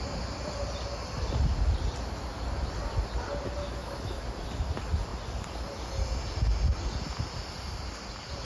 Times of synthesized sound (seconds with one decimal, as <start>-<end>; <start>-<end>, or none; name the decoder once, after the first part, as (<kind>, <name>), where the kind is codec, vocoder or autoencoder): 3.6-4.2 (autoencoder, DAC-VAE)